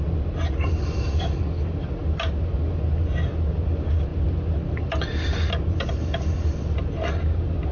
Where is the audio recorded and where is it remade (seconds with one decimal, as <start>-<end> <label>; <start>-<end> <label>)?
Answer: 0.0-7.7 recorded